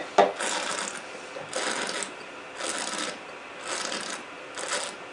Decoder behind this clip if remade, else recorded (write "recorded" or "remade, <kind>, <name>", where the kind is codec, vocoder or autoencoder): recorded